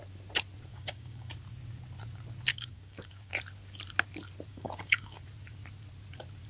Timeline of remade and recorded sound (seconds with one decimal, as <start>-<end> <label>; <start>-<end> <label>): 0.0-0.7 recorded; 0.7-1.3 remade; 1.3-2.5 recorded; 2.5-3.3 remade; 3.3-4.5 recorded; 4.5-5.2 remade; 5.2-6.5 recorded